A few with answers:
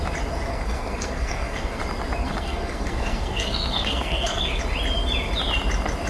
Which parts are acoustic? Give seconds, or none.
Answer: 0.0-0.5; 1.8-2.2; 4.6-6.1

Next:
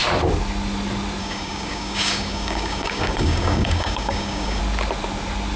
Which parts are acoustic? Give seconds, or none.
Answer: 0.0-1.2; 4.6-5.6